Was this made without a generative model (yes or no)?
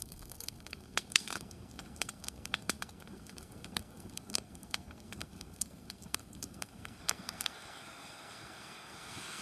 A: no